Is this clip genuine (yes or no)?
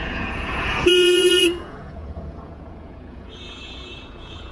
no